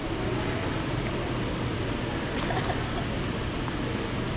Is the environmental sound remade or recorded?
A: recorded